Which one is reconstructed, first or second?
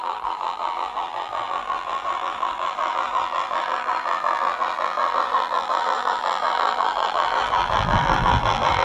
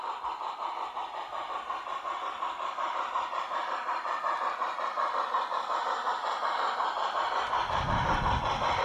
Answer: first